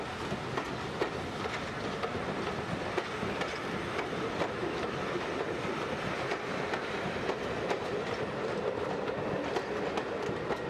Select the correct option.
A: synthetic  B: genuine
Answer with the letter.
B